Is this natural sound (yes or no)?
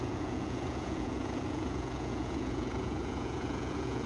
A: no